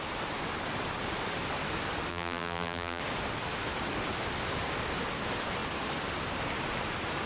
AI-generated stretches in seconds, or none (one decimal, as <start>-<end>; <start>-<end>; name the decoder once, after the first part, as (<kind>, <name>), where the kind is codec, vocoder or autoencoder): 2.1-3.0 (vocoder, BigVGAN v2)